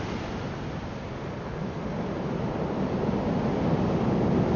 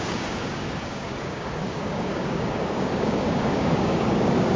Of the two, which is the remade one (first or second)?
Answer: second